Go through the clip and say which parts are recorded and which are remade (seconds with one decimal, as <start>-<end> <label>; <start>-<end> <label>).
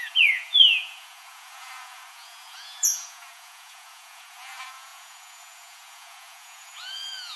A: 0.0-7.4 remade